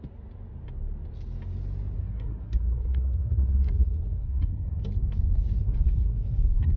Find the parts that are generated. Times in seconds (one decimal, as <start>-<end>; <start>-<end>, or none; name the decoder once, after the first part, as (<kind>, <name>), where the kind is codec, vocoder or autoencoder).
2.0-4.8 (codec, SNAC); 5.6-6.8